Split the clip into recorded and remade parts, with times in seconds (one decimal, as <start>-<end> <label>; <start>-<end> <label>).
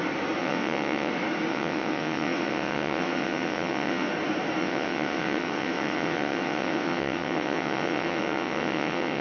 0.0-0.4 recorded; 0.4-1.1 remade; 1.1-1.5 recorded; 1.5-4.1 remade; 4.1-4.6 recorded; 4.6-9.2 remade